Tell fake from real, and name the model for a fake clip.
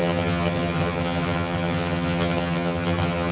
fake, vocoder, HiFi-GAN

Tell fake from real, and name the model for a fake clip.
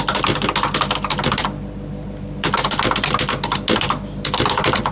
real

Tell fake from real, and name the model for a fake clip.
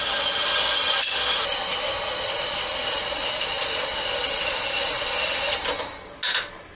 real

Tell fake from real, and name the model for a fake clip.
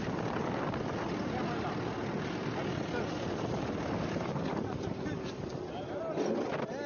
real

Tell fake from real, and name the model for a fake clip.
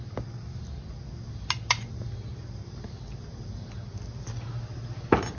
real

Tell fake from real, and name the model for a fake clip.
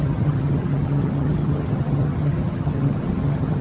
fake, vocoder, HiFi-GAN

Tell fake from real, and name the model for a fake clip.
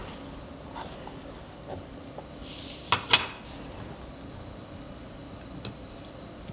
real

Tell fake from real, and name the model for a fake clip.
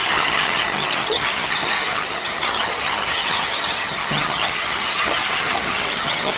fake, vocoder, HiFi-GAN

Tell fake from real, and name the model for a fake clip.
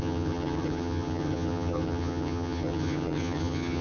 fake, vocoder, HiFi-GAN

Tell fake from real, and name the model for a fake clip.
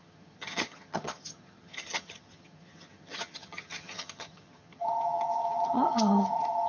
fake, vocoder, HiFi-GAN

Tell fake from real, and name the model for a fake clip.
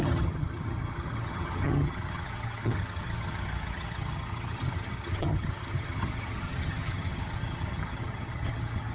fake, vocoder, HiFi-GAN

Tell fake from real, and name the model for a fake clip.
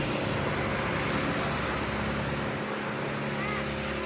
real